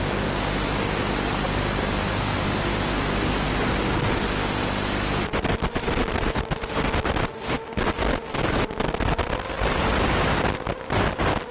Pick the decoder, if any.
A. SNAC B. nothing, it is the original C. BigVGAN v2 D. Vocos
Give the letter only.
B